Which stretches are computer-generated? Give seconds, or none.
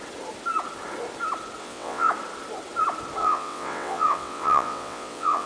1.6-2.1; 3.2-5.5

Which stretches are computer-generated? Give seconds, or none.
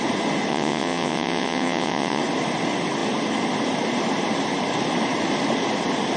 0.5-2.2